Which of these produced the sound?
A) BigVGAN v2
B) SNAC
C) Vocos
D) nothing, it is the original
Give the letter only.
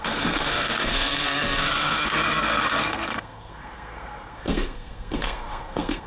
B